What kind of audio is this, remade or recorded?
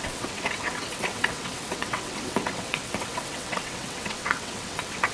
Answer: remade